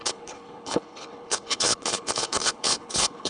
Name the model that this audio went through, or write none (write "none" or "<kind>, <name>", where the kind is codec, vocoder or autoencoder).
codec, HILCodec